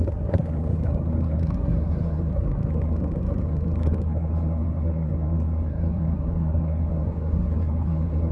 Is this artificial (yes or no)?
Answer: yes